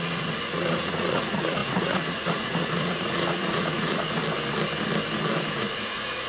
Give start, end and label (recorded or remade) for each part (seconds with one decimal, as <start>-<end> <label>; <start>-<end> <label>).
0.0-4.2 remade; 4.2-5.6 recorded; 5.6-6.3 remade